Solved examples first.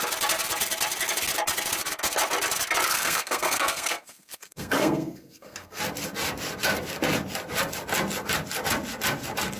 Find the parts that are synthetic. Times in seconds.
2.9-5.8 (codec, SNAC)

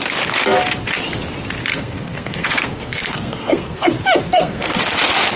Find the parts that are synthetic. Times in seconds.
1.7-3.9 (codec, SNAC); 4.3-4.8

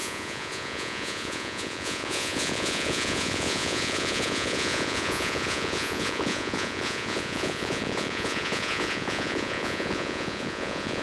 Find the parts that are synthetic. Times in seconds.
0.0-11.0 (vocoder, Vocos)

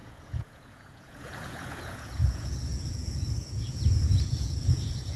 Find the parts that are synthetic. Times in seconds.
0.0-5.2 (vocoder, Vocos)

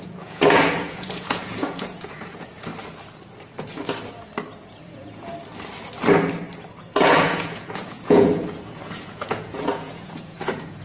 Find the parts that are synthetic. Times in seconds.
0.0-2.7 (vocoder, Vocos); 4.6-5.3; 6.8-10.8

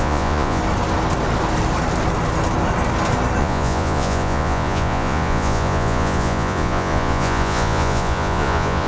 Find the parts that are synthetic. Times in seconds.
0.0-0.6 (vocoder, Vocos); 3.4-8.9